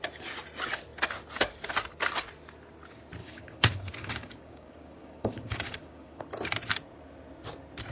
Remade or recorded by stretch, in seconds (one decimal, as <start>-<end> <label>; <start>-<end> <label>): 0.0-3.2 recorded; 3.2-6.2 remade; 6.2-7.9 recorded